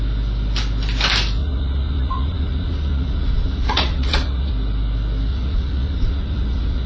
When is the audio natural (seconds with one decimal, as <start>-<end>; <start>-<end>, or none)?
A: 0.0-1.4; 4.5-5.3